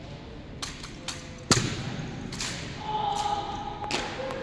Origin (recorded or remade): recorded